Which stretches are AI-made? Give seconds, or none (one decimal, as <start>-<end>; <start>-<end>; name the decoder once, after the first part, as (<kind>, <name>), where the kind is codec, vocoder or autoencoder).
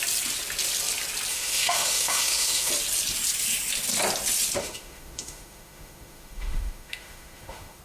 1.3-2.7 (autoencoder, DAC-VAE); 4.6-7.8